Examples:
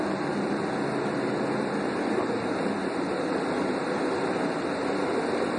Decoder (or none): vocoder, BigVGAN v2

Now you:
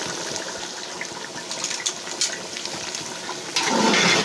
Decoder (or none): none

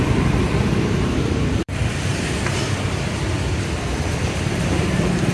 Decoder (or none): vocoder, BigVGAN v2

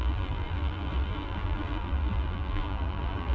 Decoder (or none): vocoder, BigVGAN v2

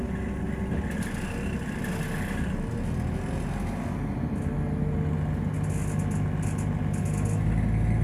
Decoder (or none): none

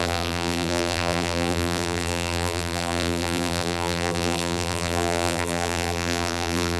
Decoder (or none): vocoder, BigVGAN v2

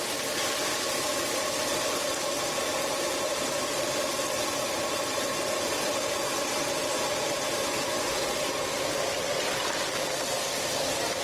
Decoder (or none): none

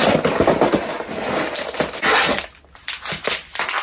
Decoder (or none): none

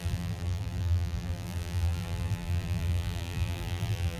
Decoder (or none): vocoder, BigVGAN v2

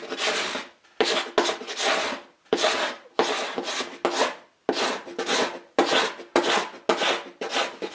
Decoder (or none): none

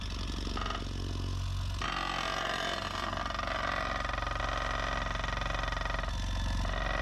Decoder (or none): none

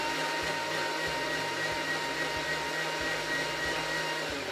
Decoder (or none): none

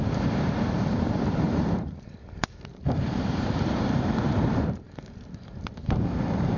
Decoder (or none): vocoder, BigVGAN v2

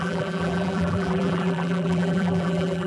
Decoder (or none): vocoder, BigVGAN v2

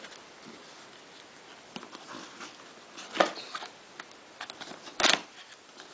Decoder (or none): none